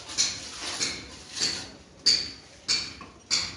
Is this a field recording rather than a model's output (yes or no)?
yes